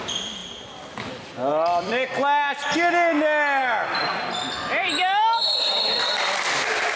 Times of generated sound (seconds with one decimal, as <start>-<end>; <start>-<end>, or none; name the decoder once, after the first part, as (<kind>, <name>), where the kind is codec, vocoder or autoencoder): 1.5-2.1 (vocoder, BigVGAN v2); 3.6-5.7